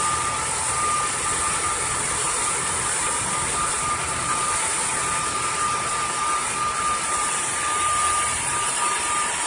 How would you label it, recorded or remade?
remade